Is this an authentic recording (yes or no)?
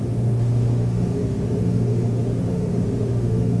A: no